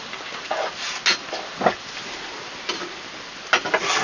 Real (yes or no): yes